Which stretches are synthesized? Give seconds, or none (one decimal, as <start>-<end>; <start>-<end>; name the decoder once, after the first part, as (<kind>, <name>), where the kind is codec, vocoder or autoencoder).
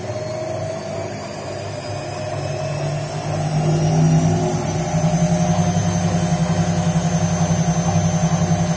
none